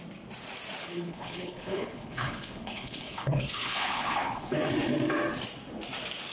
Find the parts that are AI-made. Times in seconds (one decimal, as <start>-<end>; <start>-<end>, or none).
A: 0.8-4.6

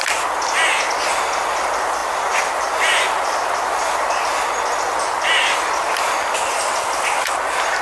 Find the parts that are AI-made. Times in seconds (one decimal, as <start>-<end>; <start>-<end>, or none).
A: none

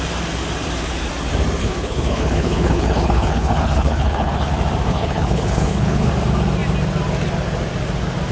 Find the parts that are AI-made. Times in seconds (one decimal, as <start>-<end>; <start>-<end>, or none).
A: 1.6-4.5; 4.9-6.1